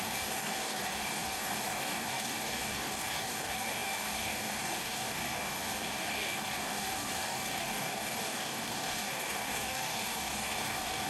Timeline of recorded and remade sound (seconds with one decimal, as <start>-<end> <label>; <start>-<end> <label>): 0.0-11.1 remade